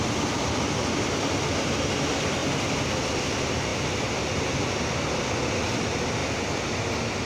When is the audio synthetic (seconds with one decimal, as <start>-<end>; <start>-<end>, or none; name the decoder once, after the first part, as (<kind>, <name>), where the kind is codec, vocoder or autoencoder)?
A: 2.4-3.3 (vocoder, BigVGAN v2)